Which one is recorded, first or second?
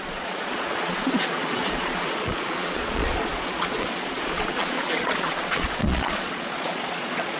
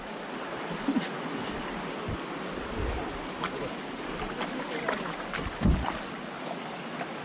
second